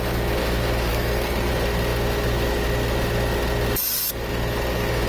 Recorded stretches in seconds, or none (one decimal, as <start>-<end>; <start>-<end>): 0.0-0.9; 1.5-5.1